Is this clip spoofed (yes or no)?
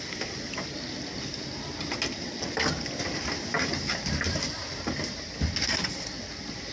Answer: no